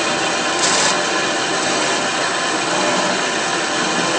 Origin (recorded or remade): recorded